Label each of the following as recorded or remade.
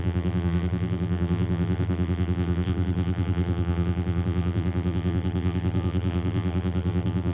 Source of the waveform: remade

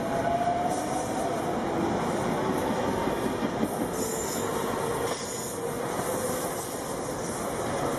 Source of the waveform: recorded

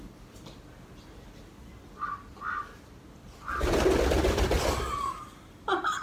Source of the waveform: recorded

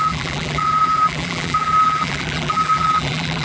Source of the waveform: remade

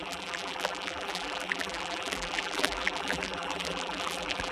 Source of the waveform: remade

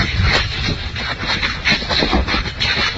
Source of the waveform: recorded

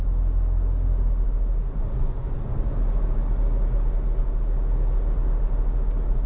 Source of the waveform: recorded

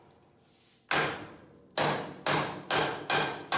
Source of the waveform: recorded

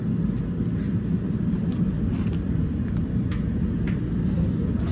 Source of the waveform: recorded